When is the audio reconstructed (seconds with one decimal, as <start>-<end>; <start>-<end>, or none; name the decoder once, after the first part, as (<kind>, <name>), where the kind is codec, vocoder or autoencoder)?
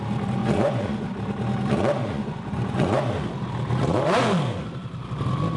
0.4-1.1 (vocoder, Vocos); 2.0-3.0